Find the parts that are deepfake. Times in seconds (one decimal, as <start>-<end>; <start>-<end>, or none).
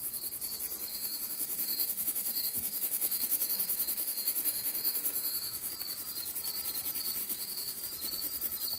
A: 0.9-5.7; 7.2-7.8